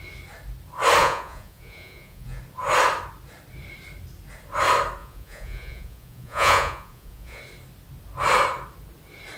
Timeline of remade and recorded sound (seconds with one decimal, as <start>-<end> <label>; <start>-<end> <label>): 0.0-1.0 recorded; 1.0-2.4 remade; 2.4-5.0 recorded; 5.0-7.4 remade; 7.4-9.4 recorded